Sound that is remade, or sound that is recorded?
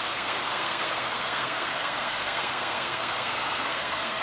remade